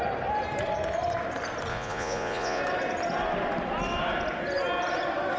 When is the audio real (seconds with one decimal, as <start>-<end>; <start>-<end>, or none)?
0.0-1.7; 2.6-5.4